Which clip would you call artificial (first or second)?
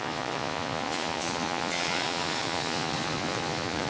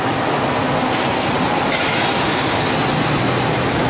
first